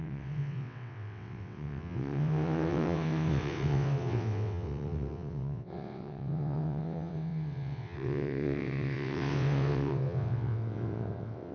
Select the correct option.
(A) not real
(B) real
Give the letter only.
A